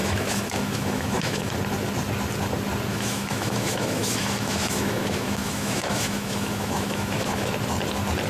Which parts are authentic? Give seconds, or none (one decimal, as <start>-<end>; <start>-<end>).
1.5-2.9; 7.5-8.3